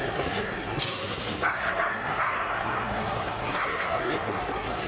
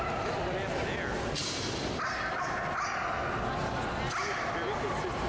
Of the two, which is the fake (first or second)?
first